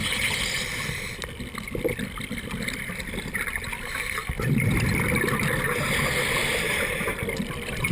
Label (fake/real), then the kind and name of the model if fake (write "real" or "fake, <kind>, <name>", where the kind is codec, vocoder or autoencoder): real